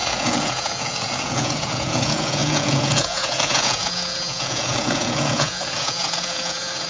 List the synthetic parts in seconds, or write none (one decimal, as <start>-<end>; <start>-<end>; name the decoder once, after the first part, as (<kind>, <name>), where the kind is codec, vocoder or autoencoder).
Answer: 0.0-6.9 (vocoder, Vocos)